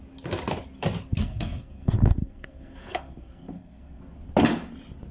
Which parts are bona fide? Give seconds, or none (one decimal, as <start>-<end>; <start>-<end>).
0.0-1.2; 4.0-5.1